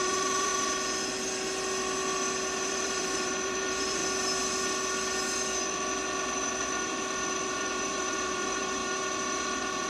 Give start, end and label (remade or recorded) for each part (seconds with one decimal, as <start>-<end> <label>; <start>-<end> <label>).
0.0-0.5 remade; 0.5-2.7 recorded; 2.7-4.0 remade; 4.0-7.5 recorded; 7.5-8.8 remade; 8.8-9.9 recorded